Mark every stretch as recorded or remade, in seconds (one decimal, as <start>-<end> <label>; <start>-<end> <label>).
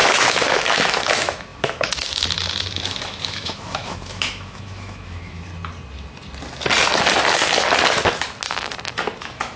0.0-5.5 remade; 5.5-9.2 recorded; 9.2-9.6 remade